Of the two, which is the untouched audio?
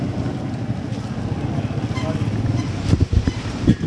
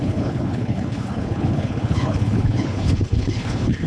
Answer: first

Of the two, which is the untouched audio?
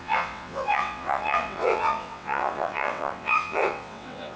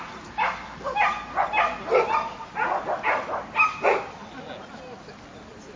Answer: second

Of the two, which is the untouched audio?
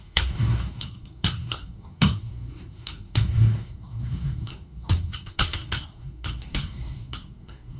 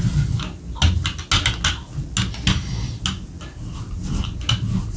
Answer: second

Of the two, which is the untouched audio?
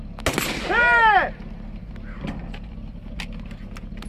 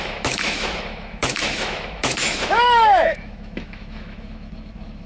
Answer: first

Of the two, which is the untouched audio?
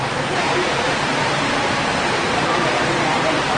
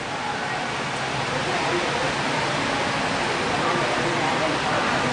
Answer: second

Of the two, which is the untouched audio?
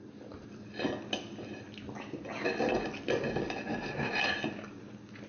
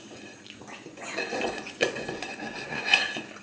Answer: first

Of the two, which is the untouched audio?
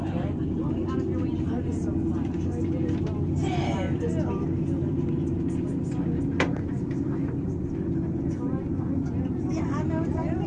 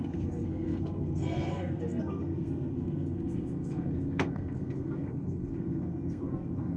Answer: first